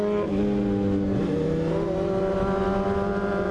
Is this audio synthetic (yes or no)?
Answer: no